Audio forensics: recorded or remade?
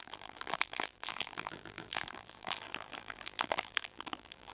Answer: remade